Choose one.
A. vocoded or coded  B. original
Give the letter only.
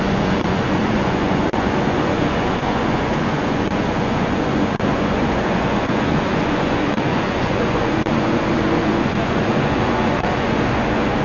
A